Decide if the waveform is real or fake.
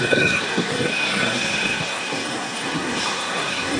fake